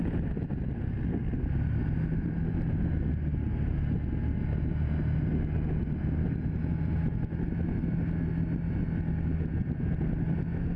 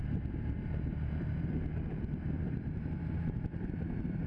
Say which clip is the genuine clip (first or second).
first